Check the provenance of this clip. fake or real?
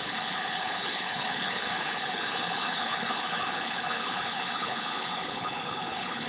fake